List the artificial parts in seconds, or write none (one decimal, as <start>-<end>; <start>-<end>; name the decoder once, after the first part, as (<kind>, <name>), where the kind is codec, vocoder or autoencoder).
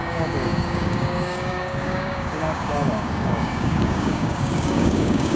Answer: 0.0-5.4 (codec, DAC)